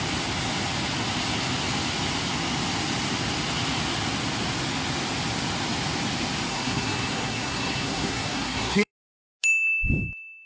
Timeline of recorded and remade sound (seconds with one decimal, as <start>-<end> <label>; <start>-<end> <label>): 0.0-6.5 recorded; 6.5-8.9 remade; 8.9-10.5 recorded